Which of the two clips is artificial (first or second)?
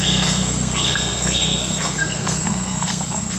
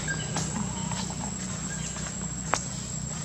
first